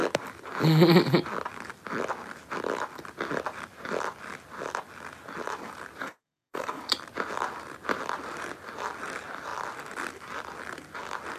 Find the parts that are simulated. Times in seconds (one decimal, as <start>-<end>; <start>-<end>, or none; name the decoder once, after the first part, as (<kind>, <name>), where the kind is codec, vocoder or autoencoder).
6.0-6.8 (codec, DAC)

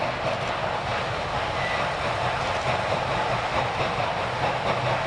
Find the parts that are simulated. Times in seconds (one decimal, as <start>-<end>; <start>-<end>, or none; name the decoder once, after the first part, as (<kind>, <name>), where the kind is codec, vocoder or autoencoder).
none

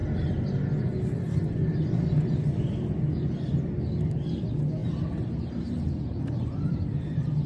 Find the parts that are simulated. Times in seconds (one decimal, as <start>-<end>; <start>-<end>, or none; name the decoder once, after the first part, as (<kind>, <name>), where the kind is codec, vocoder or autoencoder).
4.8-7.5 (vocoder, BigVGAN v2)